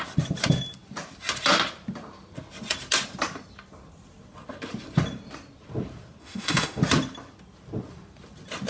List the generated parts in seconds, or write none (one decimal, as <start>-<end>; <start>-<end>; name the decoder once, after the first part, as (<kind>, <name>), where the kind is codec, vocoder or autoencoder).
6.2-6.8 (autoencoder, DAC-VAE)